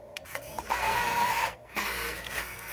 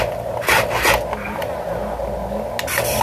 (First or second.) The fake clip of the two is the first